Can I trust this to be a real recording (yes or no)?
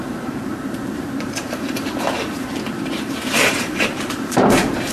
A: no